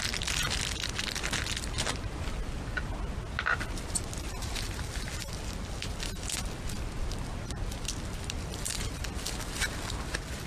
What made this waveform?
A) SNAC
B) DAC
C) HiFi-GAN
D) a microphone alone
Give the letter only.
D